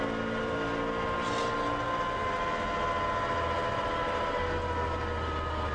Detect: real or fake real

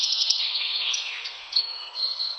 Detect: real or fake fake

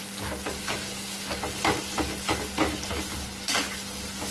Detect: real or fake real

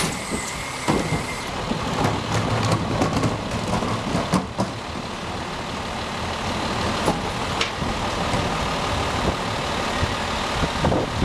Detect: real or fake real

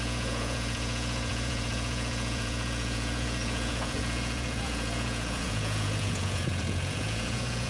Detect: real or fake fake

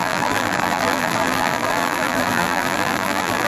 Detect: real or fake fake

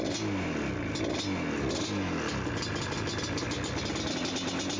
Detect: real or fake real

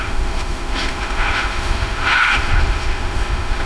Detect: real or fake fake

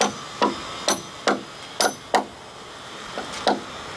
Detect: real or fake real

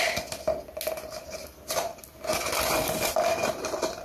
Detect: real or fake real